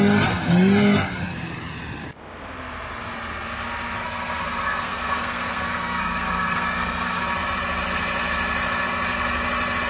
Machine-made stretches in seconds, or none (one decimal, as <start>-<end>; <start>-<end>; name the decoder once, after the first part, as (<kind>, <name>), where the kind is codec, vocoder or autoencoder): 4.0-7.2 (codec, SNAC)